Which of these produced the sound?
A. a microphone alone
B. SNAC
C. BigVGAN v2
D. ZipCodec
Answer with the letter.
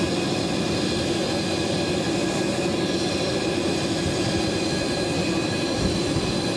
A